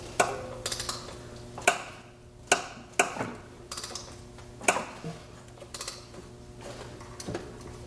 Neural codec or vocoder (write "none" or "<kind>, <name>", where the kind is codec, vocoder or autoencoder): none